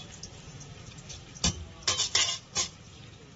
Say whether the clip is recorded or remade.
recorded